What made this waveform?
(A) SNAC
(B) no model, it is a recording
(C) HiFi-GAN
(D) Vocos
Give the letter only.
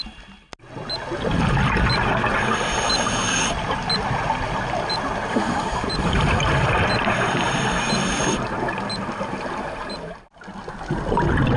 B